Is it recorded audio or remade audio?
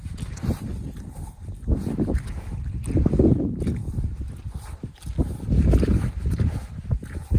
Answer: recorded